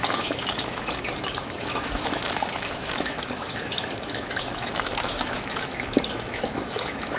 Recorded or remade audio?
remade